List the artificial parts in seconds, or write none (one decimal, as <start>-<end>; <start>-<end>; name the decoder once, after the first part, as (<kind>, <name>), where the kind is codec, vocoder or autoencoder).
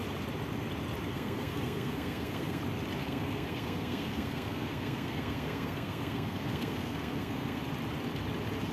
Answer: 1.1-2.6 (codec, SNAC); 3.0-7.6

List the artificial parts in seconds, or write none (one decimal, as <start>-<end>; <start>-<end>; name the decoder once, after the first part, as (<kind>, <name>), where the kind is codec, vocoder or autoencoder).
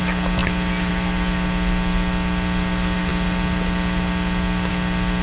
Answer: none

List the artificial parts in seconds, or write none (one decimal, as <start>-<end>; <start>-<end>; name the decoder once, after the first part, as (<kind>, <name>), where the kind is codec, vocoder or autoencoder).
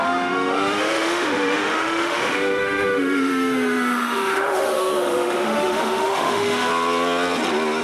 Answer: 0.0-6.7 (autoencoder, DAC-VAE)